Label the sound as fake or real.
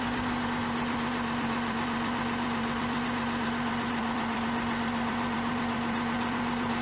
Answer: fake